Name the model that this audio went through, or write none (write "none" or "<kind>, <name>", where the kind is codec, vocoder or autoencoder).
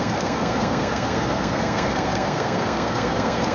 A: codec, SNAC